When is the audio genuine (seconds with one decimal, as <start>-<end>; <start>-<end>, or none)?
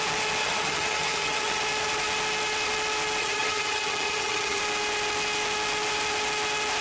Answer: 0.0-0.4; 1.6-3.2; 4.6-6.8